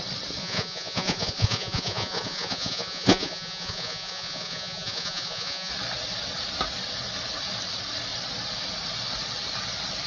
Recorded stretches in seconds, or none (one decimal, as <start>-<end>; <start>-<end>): 0.0-0.4; 5.7-10.1